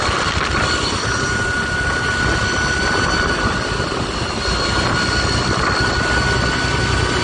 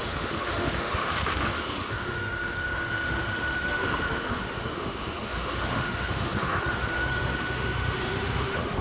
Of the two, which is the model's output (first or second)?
second